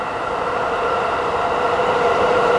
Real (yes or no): no